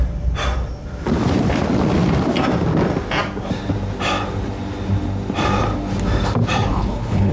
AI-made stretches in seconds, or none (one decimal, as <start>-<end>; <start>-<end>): 6.7-7.3